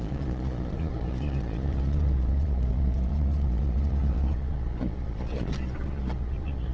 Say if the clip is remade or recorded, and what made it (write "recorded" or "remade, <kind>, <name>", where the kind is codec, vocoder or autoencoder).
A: remade, vocoder, Vocos